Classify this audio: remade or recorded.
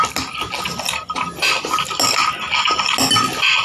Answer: recorded